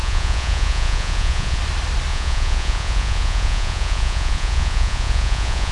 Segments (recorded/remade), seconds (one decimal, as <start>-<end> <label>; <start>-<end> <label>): 0.0-1.6 remade; 1.6-2.1 recorded; 2.1-5.7 remade